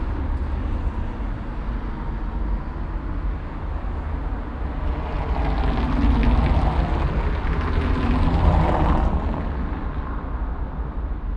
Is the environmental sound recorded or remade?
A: recorded